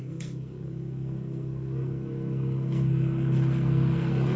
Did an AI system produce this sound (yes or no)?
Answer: yes